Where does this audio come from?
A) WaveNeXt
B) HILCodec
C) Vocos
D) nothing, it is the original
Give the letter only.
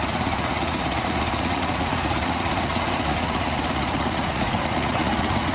C